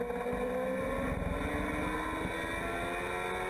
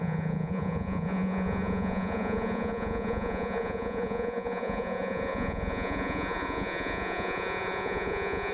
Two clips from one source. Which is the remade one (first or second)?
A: second